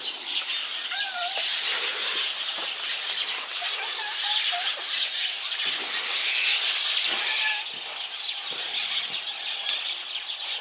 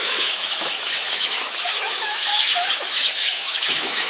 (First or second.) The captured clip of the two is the first